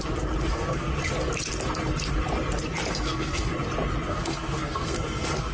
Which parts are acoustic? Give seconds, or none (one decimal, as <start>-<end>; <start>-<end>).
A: 0.0-0.5; 0.9-2.9; 3.5-4.1